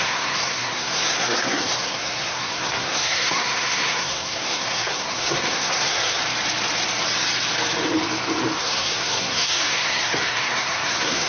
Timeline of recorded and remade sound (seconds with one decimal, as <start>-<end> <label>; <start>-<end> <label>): 0.0-6.2 remade; 6.2-8.6 recorded; 8.6-11.3 remade